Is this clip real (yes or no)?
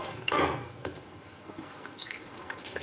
no